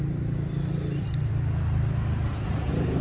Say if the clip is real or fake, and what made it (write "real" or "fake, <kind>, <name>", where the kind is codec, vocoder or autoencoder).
real